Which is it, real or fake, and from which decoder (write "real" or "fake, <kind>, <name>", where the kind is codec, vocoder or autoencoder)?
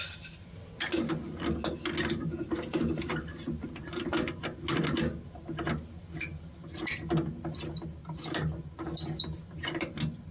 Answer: real